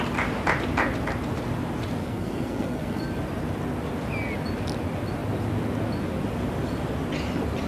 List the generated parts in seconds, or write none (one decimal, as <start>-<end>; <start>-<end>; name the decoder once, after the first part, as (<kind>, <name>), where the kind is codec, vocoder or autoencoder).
2.0-3.0 (codec, SNAC)